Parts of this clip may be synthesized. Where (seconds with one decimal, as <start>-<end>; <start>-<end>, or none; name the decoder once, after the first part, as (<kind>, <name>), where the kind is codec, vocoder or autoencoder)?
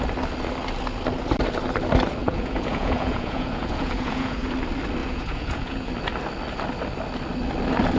2.2-4.5 (vocoder, Vocos); 5.0-5.9